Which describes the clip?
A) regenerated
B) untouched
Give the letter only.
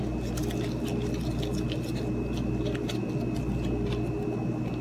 B